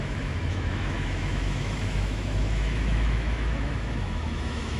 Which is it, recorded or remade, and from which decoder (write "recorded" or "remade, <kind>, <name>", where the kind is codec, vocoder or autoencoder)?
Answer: remade, autoencoder, DAC-VAE